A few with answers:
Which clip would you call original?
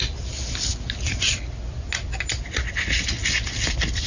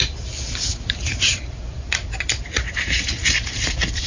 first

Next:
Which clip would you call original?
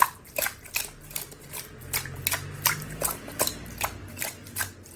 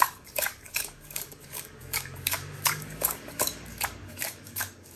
first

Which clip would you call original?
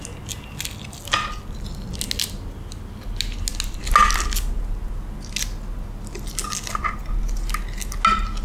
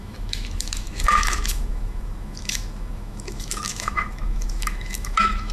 first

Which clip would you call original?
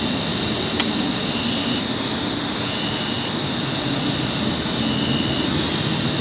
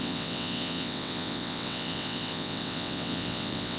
first